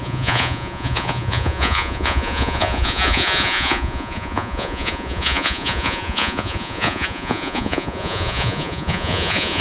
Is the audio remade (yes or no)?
yes